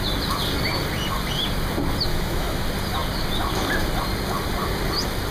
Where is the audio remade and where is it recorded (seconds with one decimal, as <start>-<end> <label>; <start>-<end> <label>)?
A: 0.0-2.1 recorded; 2.1-2.6 remade; 2.6-5.3 recorded